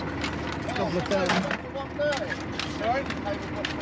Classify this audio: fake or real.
real